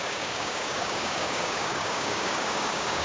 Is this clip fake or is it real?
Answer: fake